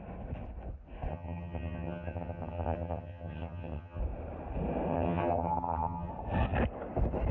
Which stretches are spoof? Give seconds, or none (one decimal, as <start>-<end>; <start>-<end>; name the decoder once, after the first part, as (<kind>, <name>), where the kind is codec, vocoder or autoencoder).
1.1-4.0 (vocoder, HiFi-GAN); 4.9-6.1